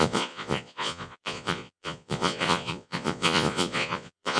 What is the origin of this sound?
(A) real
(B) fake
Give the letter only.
B